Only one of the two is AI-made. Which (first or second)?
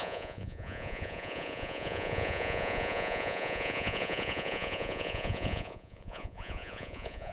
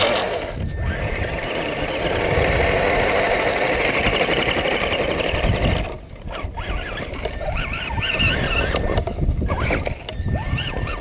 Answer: first